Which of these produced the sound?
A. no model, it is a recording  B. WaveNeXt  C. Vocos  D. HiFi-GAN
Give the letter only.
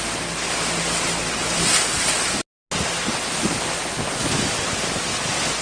A